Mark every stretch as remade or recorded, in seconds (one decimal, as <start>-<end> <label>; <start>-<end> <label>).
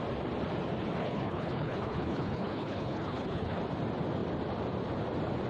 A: 0.0-1.0 recorded; 1.0-3.6 remade; 3.6-5.5 recorded